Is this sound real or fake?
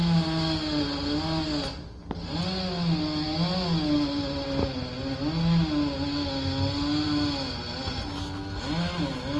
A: real